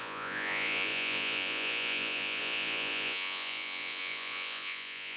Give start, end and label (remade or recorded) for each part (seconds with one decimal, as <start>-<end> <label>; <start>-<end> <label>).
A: 0.0-5.2 remade